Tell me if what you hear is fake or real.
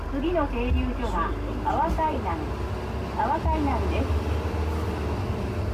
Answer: real